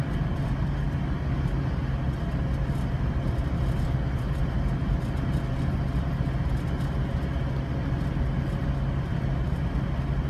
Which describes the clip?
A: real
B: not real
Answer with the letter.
A